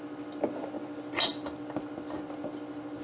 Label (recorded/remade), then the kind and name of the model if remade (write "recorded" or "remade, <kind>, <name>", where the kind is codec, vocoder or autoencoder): recorded